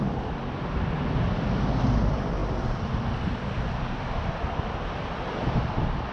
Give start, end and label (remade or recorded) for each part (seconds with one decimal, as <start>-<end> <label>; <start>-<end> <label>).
0.0-2.4 remade; 2.4-4.3 recorded; 4.3-6.1 remade

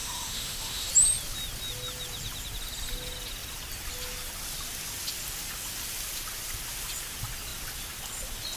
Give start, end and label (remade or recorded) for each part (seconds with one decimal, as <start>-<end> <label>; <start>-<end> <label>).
0.0-0.9 remade; 0.9-8.6 recorded

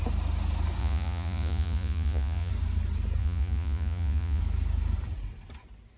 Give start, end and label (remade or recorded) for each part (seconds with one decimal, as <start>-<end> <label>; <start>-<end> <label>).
0.0-0.8 recorded; 0.8-2.5 remade; 2.5-3.2 recorded; 3.2-4.4 remade; 4.4-6.0 recorded

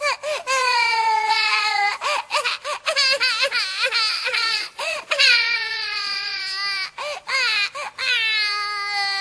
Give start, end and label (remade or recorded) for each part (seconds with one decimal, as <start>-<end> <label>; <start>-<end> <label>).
0.0-0.6 recorded; 0.6-2.0 remade; 2.0-4.1 recorded; 4.1-6.4 remade; 6.4-9.2 recorded

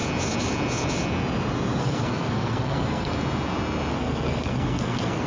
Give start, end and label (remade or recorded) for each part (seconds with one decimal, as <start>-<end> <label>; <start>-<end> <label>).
0.0-1.8 recorded; 1.8-3.1 remade; 3.1-3.9 recorded; 3.9-5.3 remade

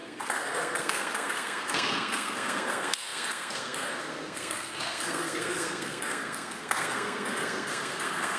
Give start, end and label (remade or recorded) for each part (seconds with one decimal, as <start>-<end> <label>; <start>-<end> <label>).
0.0-8.4 remade